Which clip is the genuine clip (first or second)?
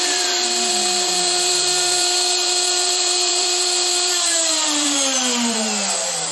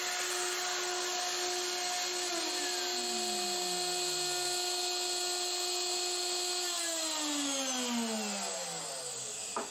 second